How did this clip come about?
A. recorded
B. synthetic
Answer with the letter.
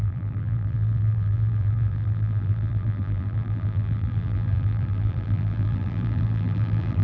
B